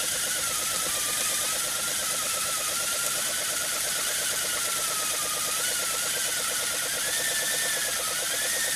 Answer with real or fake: fake